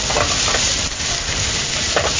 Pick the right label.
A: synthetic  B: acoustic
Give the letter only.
B